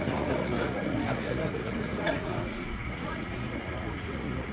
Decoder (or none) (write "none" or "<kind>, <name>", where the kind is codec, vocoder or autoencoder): vocoder, Vocos